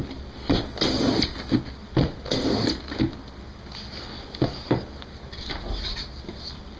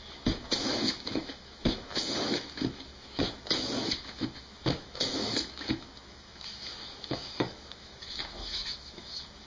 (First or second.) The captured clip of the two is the first